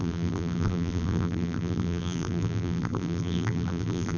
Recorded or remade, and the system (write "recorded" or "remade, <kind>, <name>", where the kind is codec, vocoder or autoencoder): remade, vocoder, BigVGAN v2